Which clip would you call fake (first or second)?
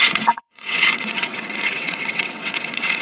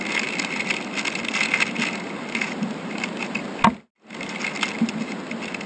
first